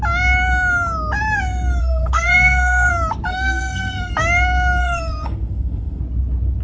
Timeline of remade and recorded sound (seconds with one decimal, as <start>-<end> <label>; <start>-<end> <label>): 0.0-1.8 recorded; 1.8-2.9 remade; 2.9-3.3 recorded; 3.3-4.1 remade; 4.1-4.8 recorded; 4.8-6.0 remade; 6.0-6.6 recorded